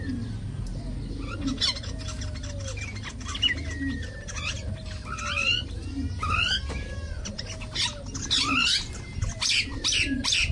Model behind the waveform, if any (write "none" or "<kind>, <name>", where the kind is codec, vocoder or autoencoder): none